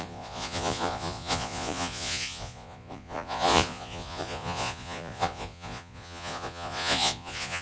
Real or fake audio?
fake